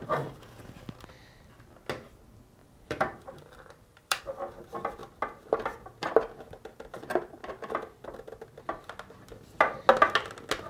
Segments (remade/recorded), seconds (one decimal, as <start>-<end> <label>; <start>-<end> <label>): 0.0-2.6 recorded; 2.6-4.2 remade; 4.2-10.7 recorded